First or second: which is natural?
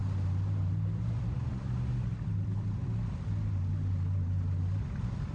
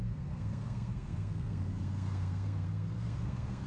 first